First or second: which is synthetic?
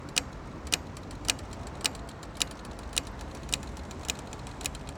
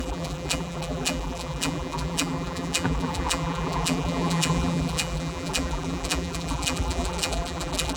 second